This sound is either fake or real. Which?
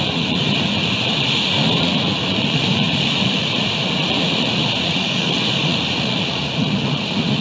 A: fake